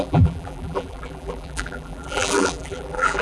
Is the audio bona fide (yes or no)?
no